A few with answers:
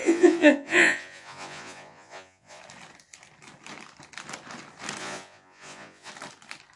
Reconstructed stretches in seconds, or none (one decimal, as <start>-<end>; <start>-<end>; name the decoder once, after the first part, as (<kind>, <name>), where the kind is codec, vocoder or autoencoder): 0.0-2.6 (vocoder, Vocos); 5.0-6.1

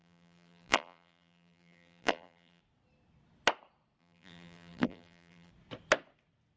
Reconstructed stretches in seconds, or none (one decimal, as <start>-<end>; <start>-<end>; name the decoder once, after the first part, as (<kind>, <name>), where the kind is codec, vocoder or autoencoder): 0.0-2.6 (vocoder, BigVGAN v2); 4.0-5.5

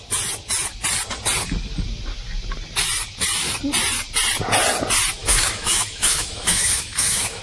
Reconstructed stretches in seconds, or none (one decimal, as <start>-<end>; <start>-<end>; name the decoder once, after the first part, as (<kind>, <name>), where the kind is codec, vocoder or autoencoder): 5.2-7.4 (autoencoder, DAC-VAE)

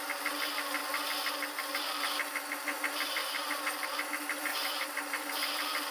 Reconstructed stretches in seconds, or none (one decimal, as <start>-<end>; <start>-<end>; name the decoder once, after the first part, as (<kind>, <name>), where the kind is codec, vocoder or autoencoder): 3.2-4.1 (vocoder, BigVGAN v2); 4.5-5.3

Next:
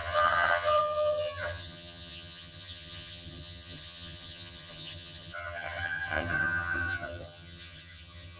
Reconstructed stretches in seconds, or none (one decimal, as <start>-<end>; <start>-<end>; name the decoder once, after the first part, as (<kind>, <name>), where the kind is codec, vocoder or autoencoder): 0.0-8.4 (vocoder, HiFi-GAN)

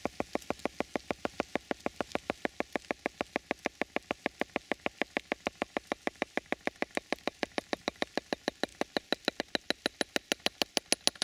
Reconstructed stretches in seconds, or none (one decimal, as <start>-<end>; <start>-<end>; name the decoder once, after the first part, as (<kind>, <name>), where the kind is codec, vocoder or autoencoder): none

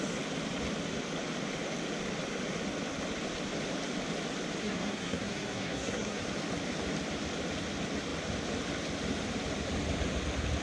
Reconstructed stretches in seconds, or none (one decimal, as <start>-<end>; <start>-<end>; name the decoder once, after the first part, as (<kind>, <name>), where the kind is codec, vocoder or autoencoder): 4.6-6.2 (codec, SNAC)